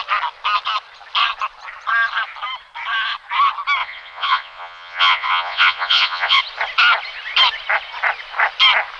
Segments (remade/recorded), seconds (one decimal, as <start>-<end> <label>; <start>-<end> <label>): 0.0-3.8 recorded; 3.8-6.4 remade; 6.4-9.0 recorded